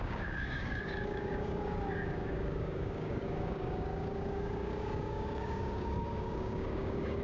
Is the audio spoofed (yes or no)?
yes